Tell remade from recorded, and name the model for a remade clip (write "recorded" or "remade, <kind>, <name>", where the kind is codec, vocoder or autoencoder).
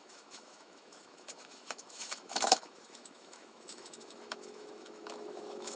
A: remade, autoencoder, DAC-VAE